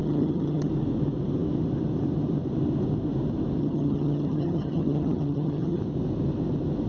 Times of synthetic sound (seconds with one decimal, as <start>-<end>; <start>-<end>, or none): 0.0-0.7; 3.6-5.8